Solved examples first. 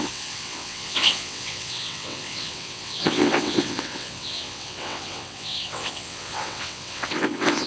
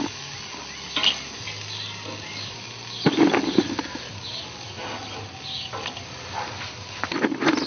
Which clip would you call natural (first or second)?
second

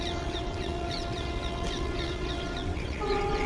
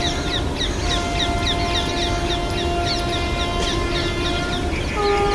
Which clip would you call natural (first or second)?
second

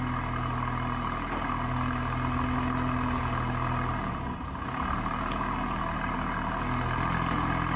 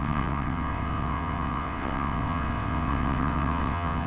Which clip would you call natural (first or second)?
first